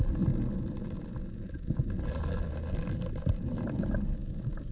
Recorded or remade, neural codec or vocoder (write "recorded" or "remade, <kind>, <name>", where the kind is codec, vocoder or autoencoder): recorded